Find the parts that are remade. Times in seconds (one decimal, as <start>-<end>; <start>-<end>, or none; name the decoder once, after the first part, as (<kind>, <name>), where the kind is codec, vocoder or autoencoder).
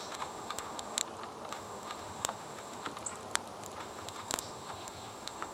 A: 0.0-1.0 (autoencoder, DAC-VAE); 1.5-2.9; 3.8-5.5